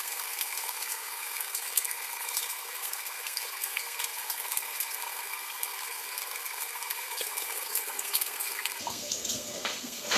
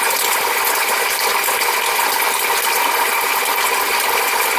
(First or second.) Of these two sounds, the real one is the second